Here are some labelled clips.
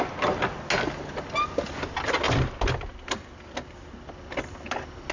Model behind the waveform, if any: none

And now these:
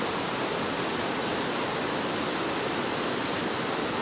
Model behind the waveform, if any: none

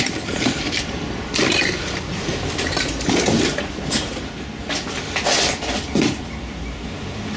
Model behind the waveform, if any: vocoder, BigVGAN v2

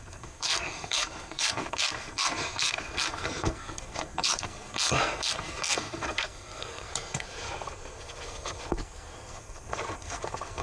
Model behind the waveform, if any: codec, SNAC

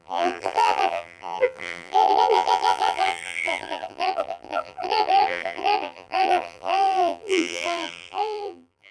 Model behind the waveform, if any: vocoder, BigVGAN v2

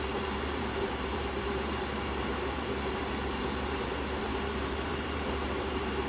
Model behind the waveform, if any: vocoder, BigVGAN v2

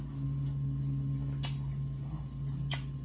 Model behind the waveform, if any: none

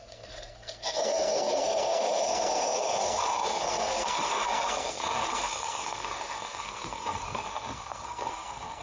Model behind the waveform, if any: codec, SNAC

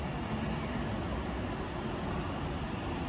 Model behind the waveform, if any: none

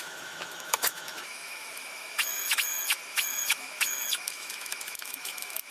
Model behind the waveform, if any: autoencoder, DAC-VAE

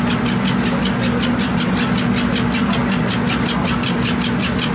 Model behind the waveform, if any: none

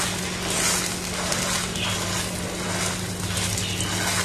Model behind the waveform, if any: none